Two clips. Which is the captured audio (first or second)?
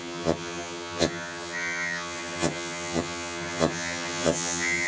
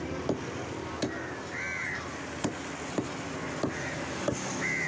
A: second